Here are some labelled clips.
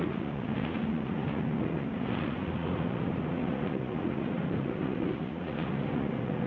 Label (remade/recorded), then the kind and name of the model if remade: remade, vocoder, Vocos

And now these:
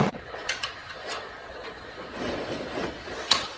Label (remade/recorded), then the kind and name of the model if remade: remade, vocoder, Vocos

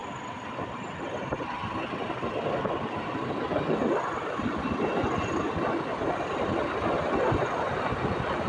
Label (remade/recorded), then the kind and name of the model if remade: recorded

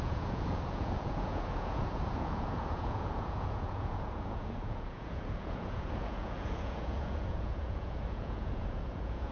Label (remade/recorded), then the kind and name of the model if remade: remade, vocoder, Vocos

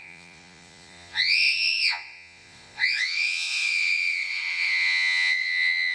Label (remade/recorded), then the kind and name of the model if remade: remade, vocoder, Vocos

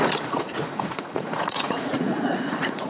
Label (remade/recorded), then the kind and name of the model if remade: remade, vocoder, Vocos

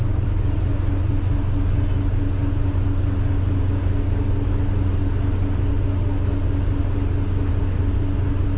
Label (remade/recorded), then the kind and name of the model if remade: recorded